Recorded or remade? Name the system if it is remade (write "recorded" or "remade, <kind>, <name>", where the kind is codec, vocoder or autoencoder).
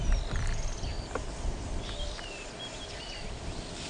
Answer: remade, vocoder, BigVGAN v2